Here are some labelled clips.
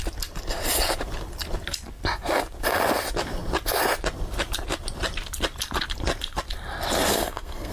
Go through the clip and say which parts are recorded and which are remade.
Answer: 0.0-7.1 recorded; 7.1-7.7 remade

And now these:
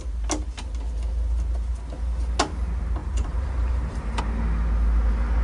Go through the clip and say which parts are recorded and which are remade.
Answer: 0.0-3.0 recorded; 3.0-4.2 remade; 4.2-5.4 recorded

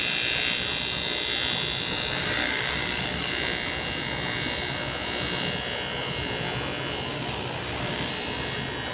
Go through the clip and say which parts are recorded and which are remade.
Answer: 0.0-2.2 recorded; 2.2-3.3 remade; 3.3-7.1 recorded; 7.1-8.1 remade; 8.1-8.9 recorded

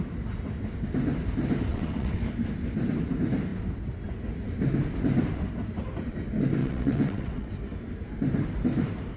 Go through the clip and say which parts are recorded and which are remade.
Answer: 0.0-1.7 recorded; 1.7-2.2 remade; 2.2-6.6 recorded; 6.6-7.5 remade; 7.5-9.2 recorded

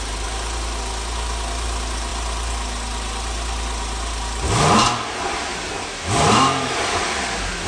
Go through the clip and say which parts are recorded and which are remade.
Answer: 0.0-7.7 recorded

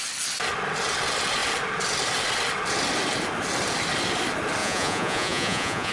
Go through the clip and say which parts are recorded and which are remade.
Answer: 0.0-4.6 recorded; 4.6-5.9 remade

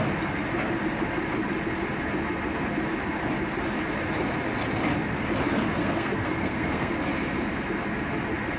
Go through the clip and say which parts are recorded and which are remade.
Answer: 0.0-5.8 recorded; 5.8-6.9 remade; 6.9-8.6 recorded